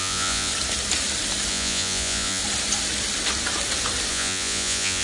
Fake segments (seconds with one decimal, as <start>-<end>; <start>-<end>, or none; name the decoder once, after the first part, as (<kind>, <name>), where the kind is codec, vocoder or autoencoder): 0.0-0.5 (vocoder, Vocos); 1.5-2.4; 4.1-5.0